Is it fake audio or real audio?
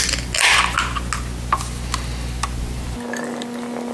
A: real